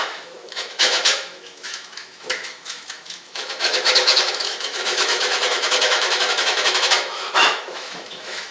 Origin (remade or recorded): remade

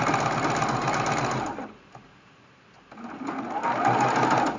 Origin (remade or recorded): recorded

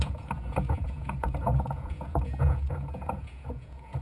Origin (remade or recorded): remade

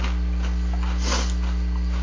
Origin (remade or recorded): recorded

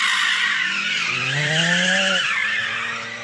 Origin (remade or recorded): remade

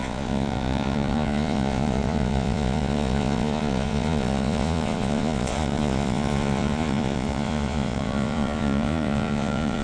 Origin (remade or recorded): remade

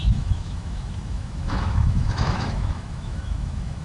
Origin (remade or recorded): remade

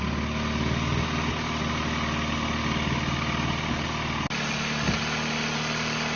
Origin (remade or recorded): recorded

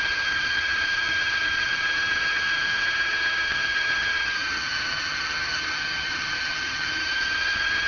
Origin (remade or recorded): remade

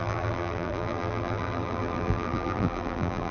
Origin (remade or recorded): remade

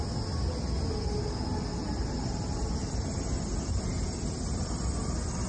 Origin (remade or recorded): recorded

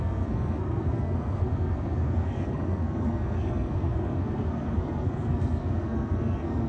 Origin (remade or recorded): remade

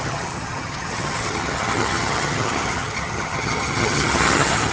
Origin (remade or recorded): remade